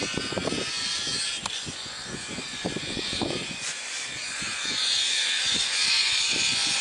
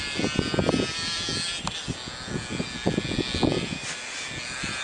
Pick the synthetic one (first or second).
first